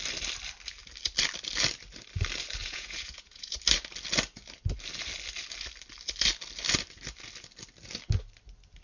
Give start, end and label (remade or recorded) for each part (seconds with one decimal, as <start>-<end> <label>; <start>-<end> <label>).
0.0-2.6 recorded; 2.6-3.6 remade; 3.6-8.8 recorded